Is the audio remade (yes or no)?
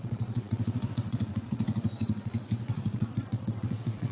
yes